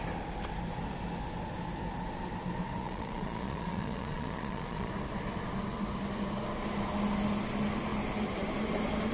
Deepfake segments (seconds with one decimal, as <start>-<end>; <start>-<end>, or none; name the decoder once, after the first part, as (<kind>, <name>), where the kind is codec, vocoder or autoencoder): 2.8-4.9 (vocoder, Vocos)